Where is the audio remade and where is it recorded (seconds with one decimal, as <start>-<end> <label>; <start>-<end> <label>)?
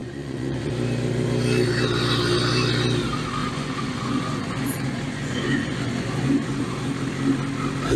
0.0-0.7 remade; 0.7-3.4 recorded; 3.4-6.9 remade; 6.9-8.0 recorded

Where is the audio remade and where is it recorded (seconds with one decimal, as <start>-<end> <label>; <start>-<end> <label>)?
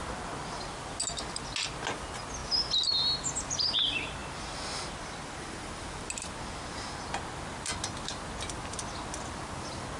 0.0-1.0 remade; 1.0-10.0 recorded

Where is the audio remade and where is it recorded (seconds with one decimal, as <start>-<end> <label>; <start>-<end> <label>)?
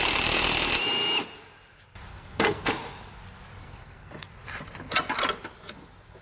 0.0-2.1 recorded; 2.1-2.7 remade; 2.7-3.6 recorded; 3.6-4.3 remade; 4.3-6.2 recorded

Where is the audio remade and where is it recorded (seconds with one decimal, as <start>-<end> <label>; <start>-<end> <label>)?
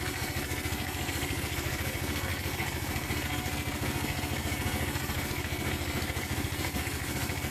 0.0-7.5 remade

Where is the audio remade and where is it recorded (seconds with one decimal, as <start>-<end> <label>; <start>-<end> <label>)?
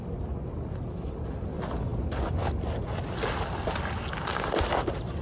0.0-5.2 recorded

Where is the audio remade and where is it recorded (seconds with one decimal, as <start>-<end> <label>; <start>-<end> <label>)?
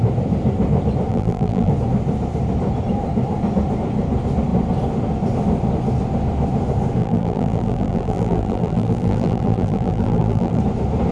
0.0-1.1 recorded; 1.1-1.7 remade; 1.7-7.0 recorded; 7.0-10.6 remade; 10.6-11.1 recorded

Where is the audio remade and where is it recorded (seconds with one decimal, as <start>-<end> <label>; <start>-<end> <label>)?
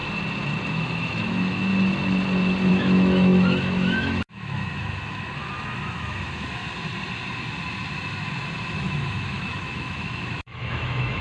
0.0-0.7 recorded; 0.7-1.7 remade; 1.7-2.7 recorded; 2.7-6.6 remade; 6.6-8.7 recorded; 8.7-11.2 remade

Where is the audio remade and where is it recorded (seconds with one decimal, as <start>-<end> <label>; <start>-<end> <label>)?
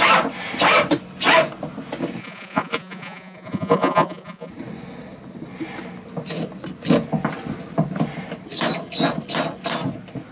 0.0-2.2 recorded; 2.2-4.5 remade; 4.5-10.3 recorded